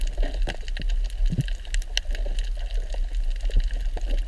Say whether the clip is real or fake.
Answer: real